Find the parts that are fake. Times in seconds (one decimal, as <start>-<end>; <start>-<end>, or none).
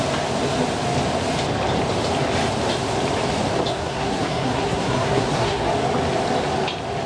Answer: 3.7-5.7